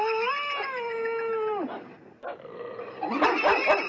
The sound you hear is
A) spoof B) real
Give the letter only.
B